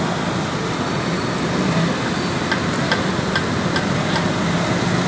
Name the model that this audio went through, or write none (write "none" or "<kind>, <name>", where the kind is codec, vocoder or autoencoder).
none